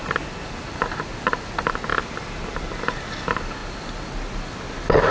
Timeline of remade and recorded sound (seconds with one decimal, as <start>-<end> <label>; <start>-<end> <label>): 0.0-5.1 recorded